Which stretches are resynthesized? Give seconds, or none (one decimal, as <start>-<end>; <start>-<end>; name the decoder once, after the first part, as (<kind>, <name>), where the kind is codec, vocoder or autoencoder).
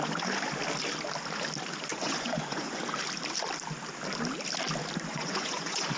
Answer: 1.9-2.8 (vocoder, Vocos); 5.1-6.0